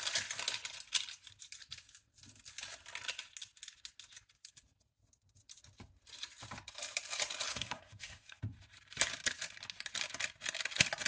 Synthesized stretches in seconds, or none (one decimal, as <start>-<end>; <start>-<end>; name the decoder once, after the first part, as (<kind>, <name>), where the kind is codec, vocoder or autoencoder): 7.5-8.4 (codec, SNAC)